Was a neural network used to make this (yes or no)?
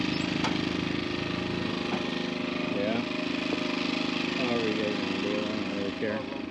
no